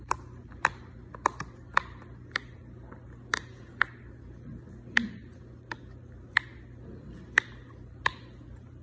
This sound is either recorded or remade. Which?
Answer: recorded